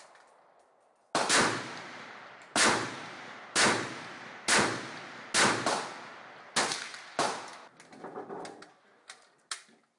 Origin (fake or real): real